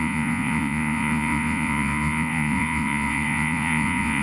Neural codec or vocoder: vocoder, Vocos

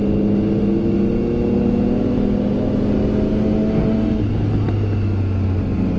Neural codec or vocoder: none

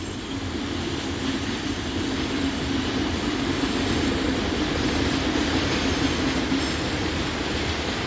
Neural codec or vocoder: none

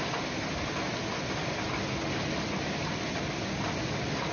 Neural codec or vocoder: none